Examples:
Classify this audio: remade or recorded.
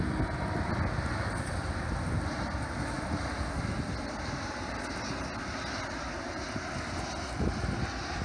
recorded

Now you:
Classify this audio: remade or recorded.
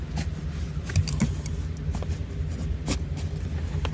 recorded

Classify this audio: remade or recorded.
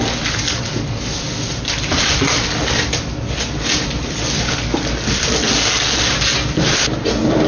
recorded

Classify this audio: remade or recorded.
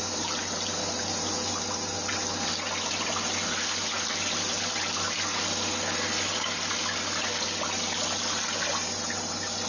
recorded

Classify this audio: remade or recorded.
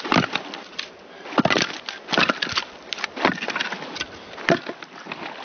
recorded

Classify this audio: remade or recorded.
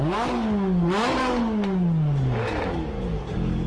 remade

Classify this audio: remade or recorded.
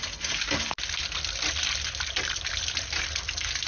recorded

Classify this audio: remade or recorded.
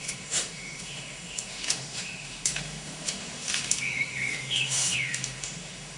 remade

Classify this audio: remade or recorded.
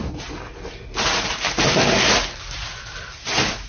recorded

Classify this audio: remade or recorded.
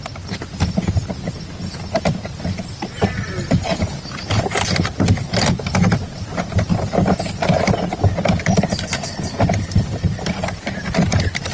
recorded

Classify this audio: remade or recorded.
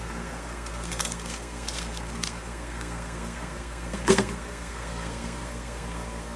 remade